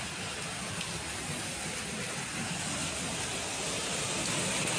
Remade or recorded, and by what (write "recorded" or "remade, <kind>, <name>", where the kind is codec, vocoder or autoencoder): recorded